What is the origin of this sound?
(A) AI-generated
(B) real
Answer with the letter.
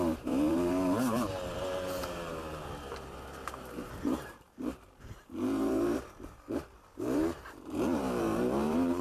A